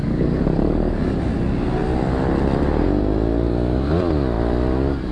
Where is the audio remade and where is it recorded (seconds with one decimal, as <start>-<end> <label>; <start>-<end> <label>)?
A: 0.0-1.0 remade; 1.0-5.1 recorded